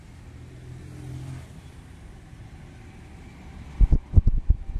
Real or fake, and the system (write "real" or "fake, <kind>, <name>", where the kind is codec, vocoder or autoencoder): real